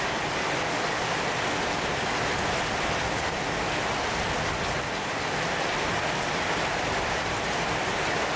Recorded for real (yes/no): yes